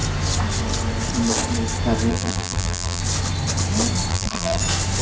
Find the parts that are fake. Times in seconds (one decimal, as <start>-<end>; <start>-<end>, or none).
2.1-3.0; 4.1-4.6